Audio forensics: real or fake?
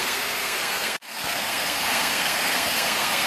fake